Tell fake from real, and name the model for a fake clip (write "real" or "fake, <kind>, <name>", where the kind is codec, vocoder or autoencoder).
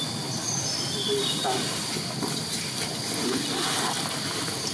real